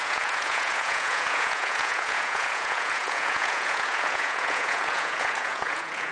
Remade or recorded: remade